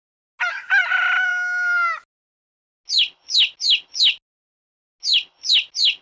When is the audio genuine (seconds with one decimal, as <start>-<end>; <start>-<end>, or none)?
0.0-6.0